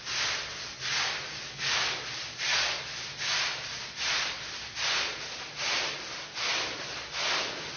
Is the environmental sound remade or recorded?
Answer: recorded